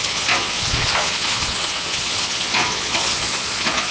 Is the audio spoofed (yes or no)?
yes